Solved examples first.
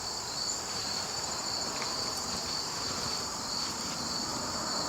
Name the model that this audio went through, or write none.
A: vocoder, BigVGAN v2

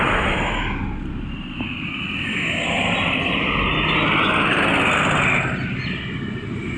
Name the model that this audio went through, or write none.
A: none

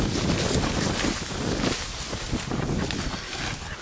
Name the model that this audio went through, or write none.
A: none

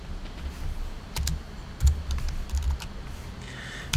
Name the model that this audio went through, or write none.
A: none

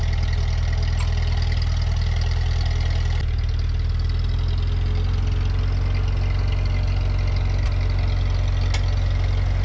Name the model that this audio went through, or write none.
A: none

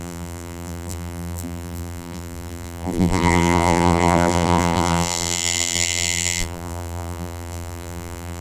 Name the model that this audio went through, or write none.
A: vocoder, BigVGAN v2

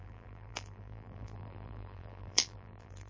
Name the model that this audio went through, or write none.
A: vocoder, BigVGAN v2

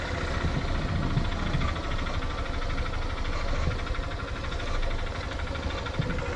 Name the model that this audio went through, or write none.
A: none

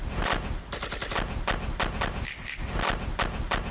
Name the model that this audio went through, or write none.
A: none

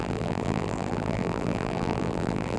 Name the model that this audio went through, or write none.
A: vocoder, BigVGAN v2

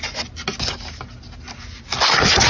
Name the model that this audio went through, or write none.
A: none